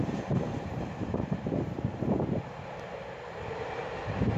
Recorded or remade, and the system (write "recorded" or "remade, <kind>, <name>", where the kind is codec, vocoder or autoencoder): remade, vocoder, BigVGAN v2